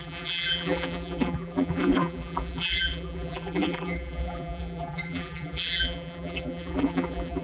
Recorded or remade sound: remade